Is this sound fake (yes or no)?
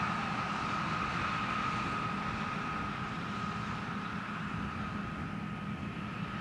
no